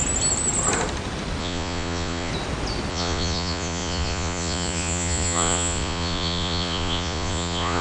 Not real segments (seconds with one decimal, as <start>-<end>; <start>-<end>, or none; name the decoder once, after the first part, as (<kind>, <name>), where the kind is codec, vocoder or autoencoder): 1.4-2.3 (vocoder, Vocos); 2.9-7.8